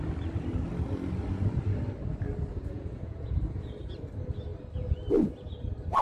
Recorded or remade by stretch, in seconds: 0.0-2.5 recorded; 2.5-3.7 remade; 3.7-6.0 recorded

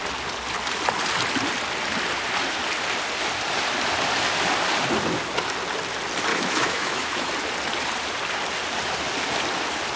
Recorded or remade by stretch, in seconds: 0.0-6.3 recorded; 6.3-7.3 remade; 7.3-10.0 recorded

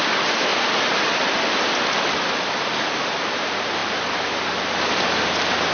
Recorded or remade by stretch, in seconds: 0.0-5.7 recorded

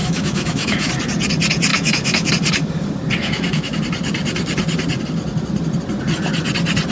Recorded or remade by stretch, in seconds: 0.0-0.9 remade; 0.9-1.7 recorded; 1.7-2.3 remade; 2.3-3.2 recorded; 3.2-3.8 remade; 3.8-6.9 recorded